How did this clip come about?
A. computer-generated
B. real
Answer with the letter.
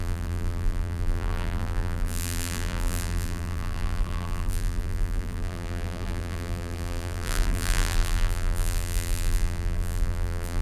A